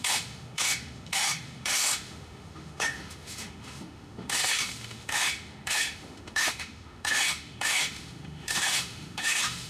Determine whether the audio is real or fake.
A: fake